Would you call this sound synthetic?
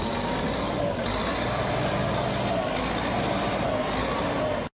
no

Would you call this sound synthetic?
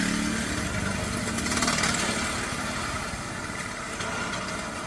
no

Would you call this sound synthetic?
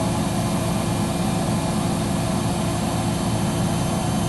no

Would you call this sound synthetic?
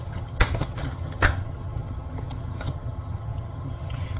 yes